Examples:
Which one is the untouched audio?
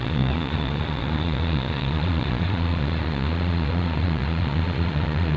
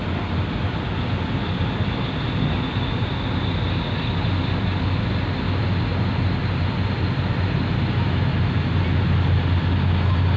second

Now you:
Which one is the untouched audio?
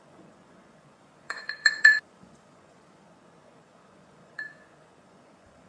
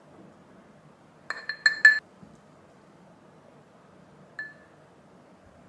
second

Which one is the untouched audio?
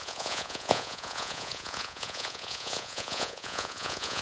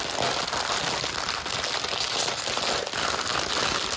second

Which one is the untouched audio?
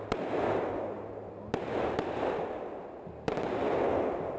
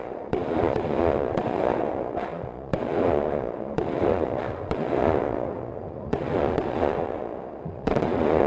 first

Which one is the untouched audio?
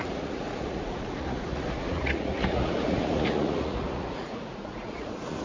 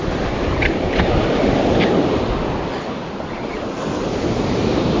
second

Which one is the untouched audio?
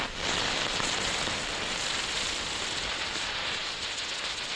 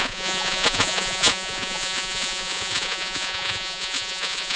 first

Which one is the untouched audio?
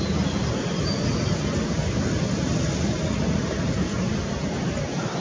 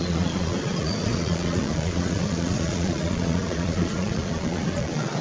first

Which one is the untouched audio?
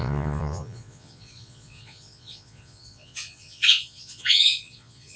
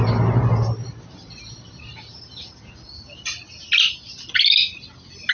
second